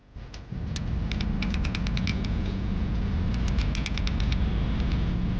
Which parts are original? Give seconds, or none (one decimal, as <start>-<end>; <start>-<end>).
0.0-2.1; 3.1-5.4